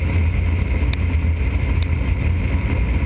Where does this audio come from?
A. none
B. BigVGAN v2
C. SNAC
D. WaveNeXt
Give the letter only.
A